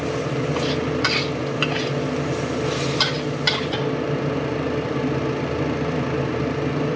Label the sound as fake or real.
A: real